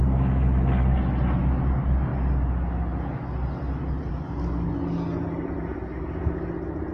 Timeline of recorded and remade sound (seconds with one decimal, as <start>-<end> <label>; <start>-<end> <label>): 0.0-6.9 recorded

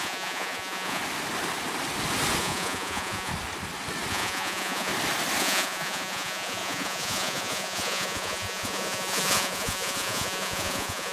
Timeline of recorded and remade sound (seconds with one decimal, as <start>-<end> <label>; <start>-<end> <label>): 0.0-1.0 remade; 1.0-2.4 recorded; 2.4-3.3 remade; 3.3-4.1 recorded; 4.1-4.9 remade; 4.9-5.4 recorded; 5.4-11.1 remade

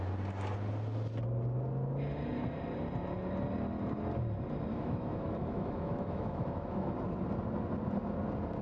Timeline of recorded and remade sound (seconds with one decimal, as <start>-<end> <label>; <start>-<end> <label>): 0.0-4.7 recorded; 4.7-6.9 remade; 6.9-8.6 recorded

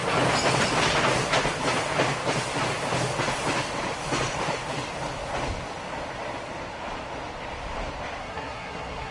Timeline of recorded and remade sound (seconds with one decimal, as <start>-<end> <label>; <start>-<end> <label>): 0.0-8.2 recorded; 8.2-9.1 remade

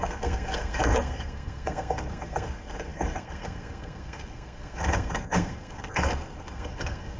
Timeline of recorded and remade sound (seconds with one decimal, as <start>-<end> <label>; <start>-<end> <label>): 0.0-7.2 remade

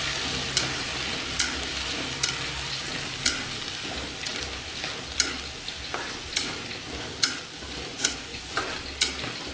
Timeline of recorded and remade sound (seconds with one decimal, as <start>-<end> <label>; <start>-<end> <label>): 0.0-7.9 recorded; 7.9-8.6 remade; 8.6-9.5 recorded

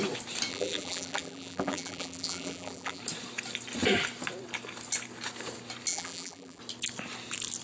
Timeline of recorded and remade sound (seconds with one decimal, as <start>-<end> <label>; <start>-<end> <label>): 0.0-0.5 recorded; 0.5-3.0 remade; 3.0-5.9 recorded; 5.9-6.6 remade; 6.6-7.6 recorded